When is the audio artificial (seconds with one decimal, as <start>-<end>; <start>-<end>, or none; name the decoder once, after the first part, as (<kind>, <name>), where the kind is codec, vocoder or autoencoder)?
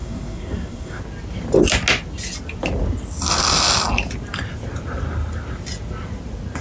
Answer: 0.0-1.0 (codec, SNAC)